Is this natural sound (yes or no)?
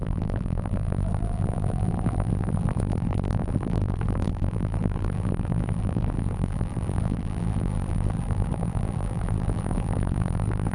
no